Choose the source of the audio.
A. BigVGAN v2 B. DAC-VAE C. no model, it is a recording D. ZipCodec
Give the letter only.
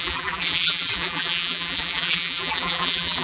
A